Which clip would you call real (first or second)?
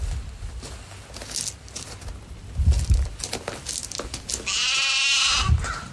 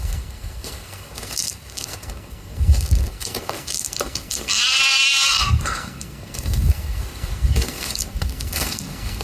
first